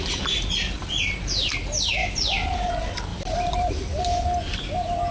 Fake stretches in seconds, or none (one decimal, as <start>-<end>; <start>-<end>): 2.0-2.7; 3.1-3.7

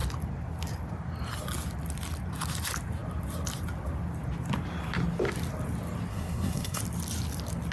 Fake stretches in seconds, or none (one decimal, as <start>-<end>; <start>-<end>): 6.1-6.8

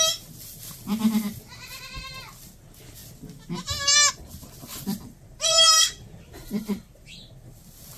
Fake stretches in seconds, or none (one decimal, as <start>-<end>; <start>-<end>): 4.7-7.6

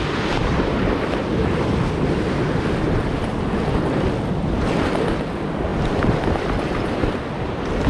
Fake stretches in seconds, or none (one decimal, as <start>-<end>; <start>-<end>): 0.4-3.3; 5.7-7.1